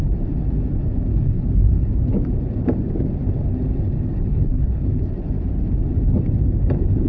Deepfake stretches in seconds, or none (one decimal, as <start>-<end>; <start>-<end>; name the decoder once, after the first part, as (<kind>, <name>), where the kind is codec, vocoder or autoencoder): 1.1-1.9 (codec, HILCodec); 4.3-5.0